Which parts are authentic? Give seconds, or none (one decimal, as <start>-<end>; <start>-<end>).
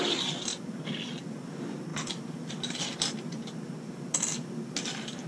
0.0-5.3